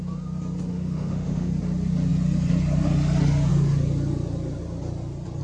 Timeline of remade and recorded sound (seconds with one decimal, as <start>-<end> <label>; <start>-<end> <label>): 0.0-0.7 recorded; 0.7-1.5 remade; 1.5-5.4 recorded